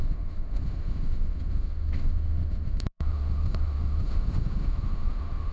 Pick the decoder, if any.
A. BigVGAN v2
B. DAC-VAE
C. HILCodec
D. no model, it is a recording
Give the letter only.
B